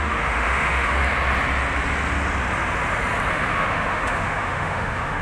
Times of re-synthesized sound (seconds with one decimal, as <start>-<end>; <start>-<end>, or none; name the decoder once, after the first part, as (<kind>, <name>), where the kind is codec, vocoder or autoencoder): 0.0-1.0 (autoencoder, DAC-VAE); 3.3-5.2